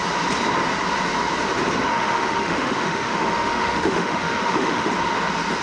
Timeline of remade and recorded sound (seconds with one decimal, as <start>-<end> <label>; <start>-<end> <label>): 0.0-1.9 recorded; 1.9-4.9 remade; 4.9-5.6 recorded